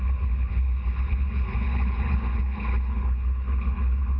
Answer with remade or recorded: remade